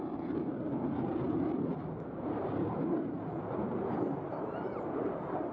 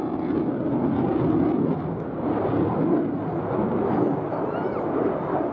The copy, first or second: first